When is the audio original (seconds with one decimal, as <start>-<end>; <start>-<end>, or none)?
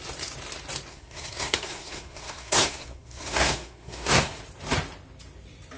0.0-0.9; 4.4-5.8